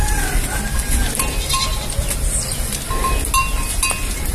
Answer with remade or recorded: recorded